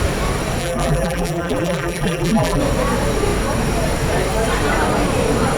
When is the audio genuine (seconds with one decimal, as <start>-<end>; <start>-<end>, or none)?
0.0-0.6; 2.6-5.6